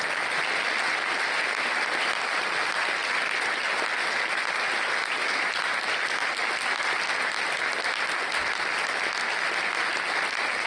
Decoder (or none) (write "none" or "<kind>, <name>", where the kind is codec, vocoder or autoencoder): none